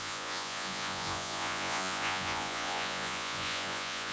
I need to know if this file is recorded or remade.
remade